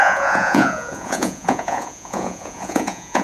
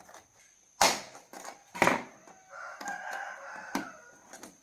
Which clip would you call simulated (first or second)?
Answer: first